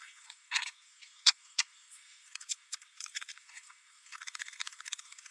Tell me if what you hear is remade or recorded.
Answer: remade